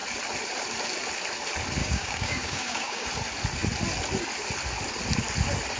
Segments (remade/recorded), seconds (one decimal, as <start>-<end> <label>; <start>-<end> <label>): 0.0-1.8 recorded; 1.8-3.1 remade; 3.1-5.8 recorded